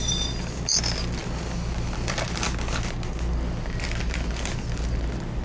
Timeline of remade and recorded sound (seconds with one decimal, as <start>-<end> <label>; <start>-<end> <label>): 0.0-5.4 recorded